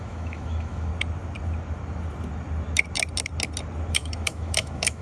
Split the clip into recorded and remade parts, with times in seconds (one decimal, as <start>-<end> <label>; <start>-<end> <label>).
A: 0.0-0.9 remade; 0.9-3.9 recorded; 3.9-5.0 remade